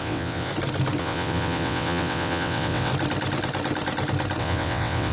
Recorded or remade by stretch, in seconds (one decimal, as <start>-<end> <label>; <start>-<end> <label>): 0.0-0.5 remade; 0.5-1.0 recorded; 1.0-2.9 remade; 2.9-4.4 recorded; 4.4-5.1 remade

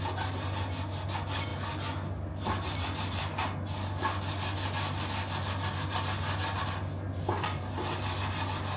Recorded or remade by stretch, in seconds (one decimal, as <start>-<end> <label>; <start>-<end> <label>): 0.0-8.8 recorded

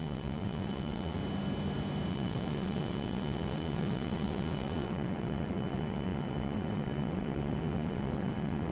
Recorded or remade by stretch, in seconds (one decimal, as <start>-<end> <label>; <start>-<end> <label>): 0.0-1.2 remade; 1.2-2.1 recorded; 2.1-8.7 remade